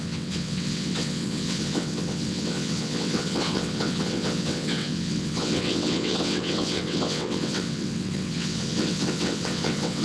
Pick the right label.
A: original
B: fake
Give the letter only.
B